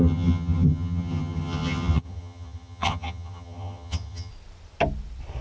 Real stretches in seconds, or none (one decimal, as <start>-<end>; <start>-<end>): 4.3-5.4